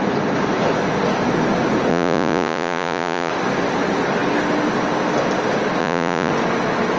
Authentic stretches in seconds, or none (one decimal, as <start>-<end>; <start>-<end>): 0.0-1.9; 3.3-5.8; 6.3-7.0